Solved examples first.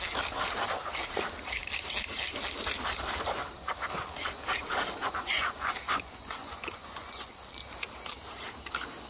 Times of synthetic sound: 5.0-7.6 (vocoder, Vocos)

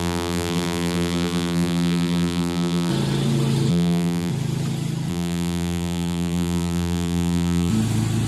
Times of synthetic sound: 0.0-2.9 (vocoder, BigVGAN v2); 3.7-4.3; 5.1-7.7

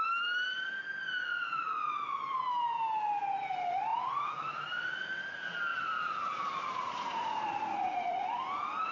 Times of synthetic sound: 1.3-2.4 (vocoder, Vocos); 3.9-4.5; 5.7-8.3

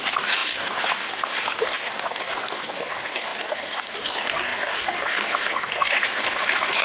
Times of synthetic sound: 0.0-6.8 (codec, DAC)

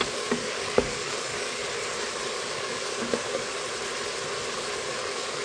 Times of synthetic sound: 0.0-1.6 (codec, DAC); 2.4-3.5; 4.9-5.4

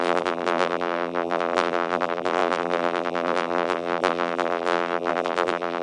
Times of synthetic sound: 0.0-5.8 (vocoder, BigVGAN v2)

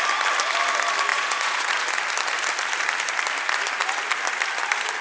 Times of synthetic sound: 1.1-1.8 (vocoder, Vocos)

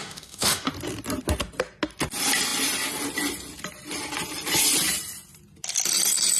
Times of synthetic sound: 0.0-0.7 (autoencoder, DAC-VAE)